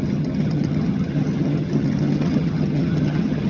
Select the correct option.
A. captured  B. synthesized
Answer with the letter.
B